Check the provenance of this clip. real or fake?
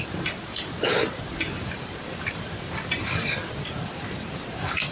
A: fake